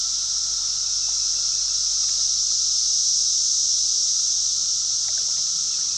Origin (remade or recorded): recorded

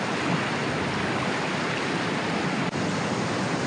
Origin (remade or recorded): recorded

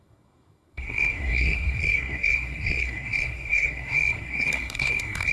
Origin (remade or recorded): remade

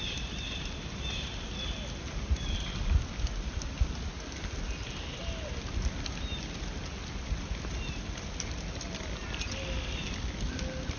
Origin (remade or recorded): recorded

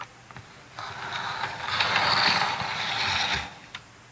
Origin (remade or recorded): recorded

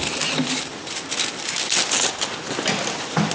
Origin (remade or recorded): recorded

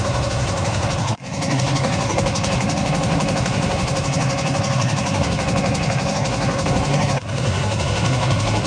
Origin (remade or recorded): remade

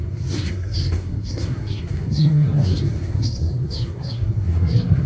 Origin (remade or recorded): remade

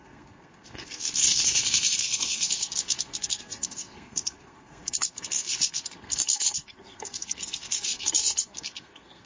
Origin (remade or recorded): remade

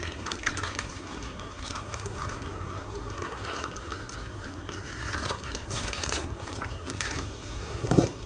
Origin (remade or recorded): remade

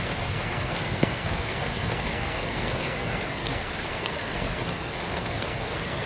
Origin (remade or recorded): remade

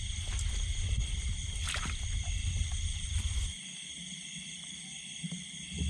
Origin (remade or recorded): recorded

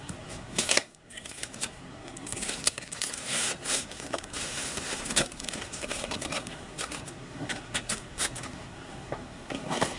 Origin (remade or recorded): remade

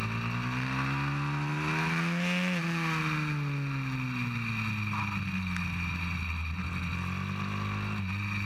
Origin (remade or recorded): recorded